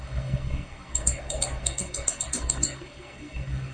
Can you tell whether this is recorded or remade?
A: remade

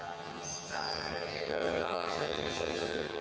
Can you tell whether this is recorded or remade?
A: remade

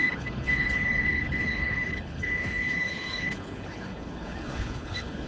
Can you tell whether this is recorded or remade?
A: remade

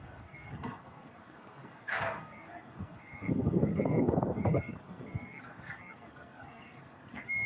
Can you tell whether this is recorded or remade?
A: remade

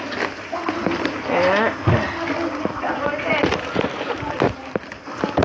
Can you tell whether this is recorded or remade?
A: recorded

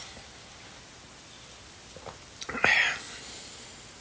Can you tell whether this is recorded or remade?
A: recorded